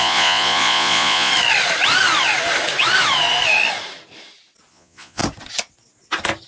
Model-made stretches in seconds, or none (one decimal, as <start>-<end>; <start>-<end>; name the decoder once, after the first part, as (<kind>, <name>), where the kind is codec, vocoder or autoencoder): 0.0-1.3 (vocoder, Vocos); 4.7-5.2

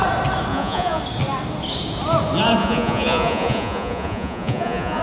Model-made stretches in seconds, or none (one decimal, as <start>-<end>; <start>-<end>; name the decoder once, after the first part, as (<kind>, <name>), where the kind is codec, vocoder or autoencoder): 0.5-1.0 (vocoder, Vocos); 2.6-5.0

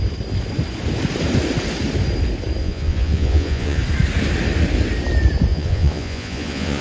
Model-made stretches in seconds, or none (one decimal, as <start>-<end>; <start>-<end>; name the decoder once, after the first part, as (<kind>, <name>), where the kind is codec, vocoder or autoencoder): 2.6-3.8 (vocoder, Vocos); 5.5-6.8

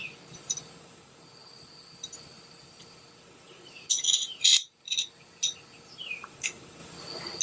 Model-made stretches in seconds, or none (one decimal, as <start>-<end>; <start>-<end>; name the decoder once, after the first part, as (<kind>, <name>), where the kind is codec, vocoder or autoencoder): none

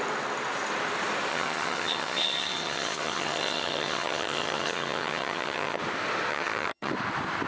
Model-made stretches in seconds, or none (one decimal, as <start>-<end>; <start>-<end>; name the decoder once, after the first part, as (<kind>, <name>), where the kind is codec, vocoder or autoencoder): 1.3-5.8 (vocoder, HiFi-GAN); 6.3-6.9

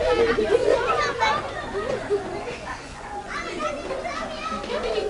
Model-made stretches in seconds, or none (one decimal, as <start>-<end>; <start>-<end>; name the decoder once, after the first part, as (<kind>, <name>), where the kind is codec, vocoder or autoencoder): 0.6-3.7 (vocoder, Vocos)

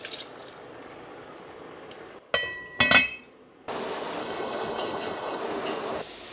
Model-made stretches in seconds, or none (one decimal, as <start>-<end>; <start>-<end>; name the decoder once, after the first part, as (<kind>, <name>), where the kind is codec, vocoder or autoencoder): 4.2-5.4 (codec, HILCodec)